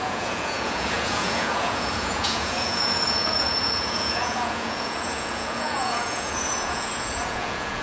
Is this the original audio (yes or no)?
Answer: no